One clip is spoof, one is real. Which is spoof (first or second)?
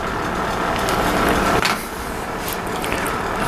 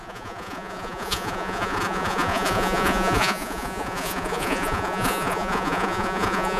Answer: second